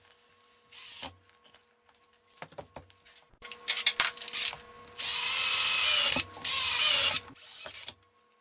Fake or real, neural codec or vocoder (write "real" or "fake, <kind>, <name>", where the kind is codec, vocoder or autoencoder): real